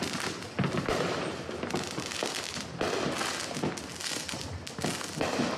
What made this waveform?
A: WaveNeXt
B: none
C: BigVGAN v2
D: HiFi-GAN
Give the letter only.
B